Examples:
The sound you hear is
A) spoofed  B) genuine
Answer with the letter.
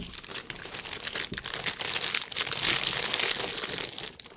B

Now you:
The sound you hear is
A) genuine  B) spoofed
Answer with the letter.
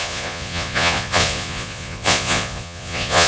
B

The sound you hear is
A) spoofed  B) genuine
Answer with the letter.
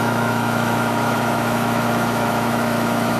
A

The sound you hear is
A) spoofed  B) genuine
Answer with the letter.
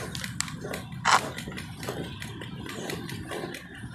B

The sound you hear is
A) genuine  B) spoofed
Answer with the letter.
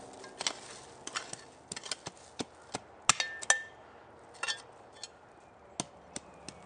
A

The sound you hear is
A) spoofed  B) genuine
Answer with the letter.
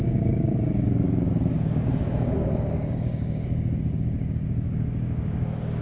A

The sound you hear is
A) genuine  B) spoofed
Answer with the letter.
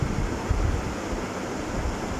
A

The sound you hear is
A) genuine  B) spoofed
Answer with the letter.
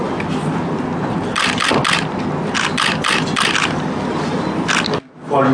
A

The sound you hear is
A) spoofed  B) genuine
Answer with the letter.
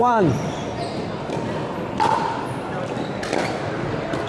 B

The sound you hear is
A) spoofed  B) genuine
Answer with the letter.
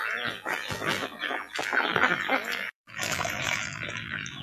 A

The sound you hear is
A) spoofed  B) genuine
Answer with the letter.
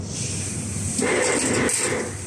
B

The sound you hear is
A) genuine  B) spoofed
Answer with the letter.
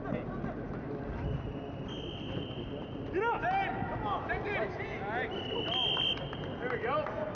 A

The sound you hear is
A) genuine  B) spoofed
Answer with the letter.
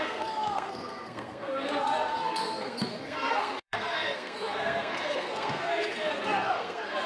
B